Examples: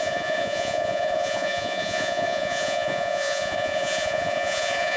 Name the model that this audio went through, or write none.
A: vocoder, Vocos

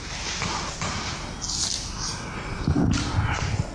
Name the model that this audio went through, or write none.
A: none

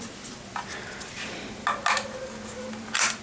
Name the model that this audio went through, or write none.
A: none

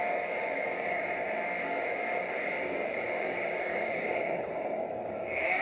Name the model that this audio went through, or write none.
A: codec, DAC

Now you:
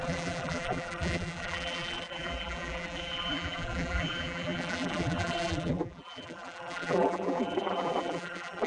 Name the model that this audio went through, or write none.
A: vocoder, BigVGAN v2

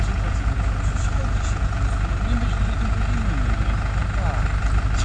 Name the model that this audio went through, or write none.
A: none